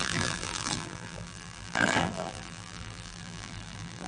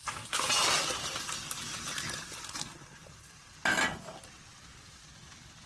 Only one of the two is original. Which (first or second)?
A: second